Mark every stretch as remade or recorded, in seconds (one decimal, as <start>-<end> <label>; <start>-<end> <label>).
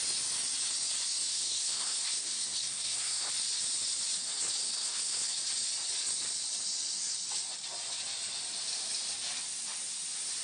0.0-1.3 recorded; 1.3-3.3 remade; 3.3-4.6 recorded; 4.6-5.5 remade; 5.5-10.4 recorded